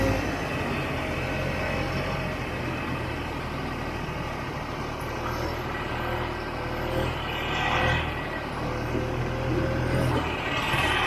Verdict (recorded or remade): recorded